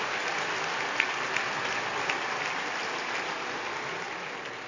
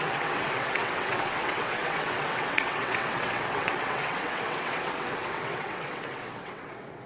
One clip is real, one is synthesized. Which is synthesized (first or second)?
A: second